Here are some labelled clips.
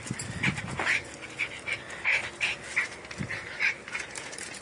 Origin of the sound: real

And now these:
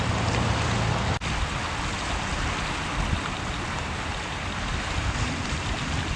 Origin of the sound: real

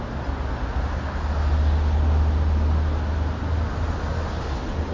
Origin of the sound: real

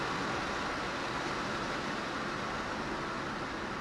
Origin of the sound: real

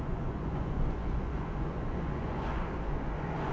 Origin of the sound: fake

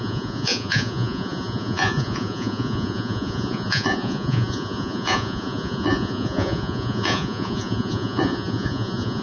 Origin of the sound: fake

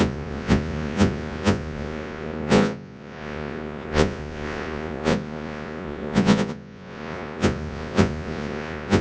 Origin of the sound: fake